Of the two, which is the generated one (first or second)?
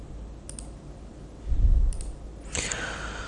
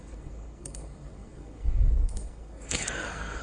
second